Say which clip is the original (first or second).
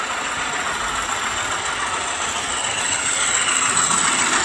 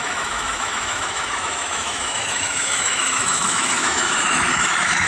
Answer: first